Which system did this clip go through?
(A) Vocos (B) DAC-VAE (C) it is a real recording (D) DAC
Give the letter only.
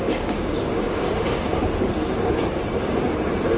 D